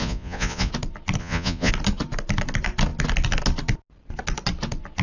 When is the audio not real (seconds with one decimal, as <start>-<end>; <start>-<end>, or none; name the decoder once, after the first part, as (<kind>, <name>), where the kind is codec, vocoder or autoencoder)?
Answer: 0.0-0.7 (vocoder, Vocos); 1.2-1.7